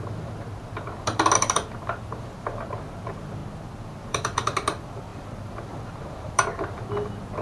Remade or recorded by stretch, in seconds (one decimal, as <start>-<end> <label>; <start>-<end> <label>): 0.0-7.4 remade